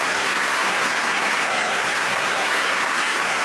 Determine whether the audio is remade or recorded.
remade